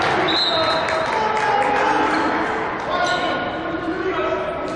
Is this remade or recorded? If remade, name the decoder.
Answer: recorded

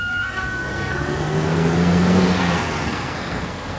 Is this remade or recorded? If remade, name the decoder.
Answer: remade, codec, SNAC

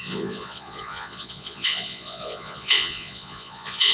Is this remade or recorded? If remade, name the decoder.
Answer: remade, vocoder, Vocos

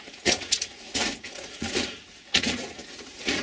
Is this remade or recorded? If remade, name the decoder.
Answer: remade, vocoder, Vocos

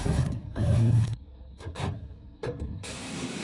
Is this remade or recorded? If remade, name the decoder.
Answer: remade, codec, SNAC